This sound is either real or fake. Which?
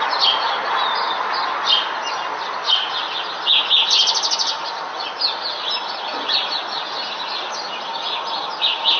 real